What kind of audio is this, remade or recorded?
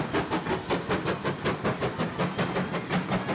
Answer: recorded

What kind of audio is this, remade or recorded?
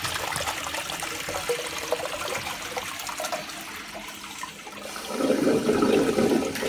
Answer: recorded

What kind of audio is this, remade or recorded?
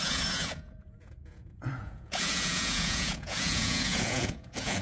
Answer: remade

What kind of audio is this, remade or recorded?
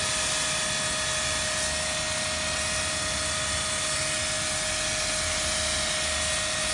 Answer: recorded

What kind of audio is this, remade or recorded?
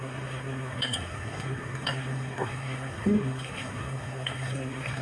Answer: remade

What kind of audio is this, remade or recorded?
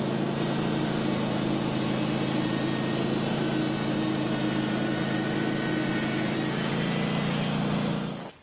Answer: recorded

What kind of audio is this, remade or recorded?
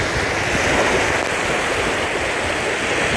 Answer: recorded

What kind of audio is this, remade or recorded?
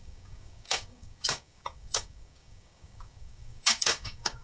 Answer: remade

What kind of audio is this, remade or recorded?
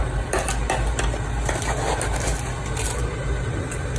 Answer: recorded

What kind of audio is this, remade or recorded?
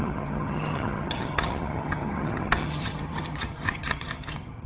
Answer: remade